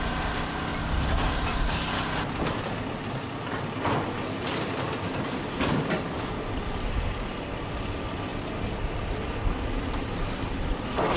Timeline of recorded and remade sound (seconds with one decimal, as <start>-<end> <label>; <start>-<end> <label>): 0.0-0.7 remade; 0.7-5.2 recorded; 5.2-8.3 remade; 8.3-9.8 recorded; 9.8-11.2 remade